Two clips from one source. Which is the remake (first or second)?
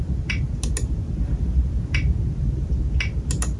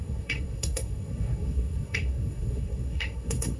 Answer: second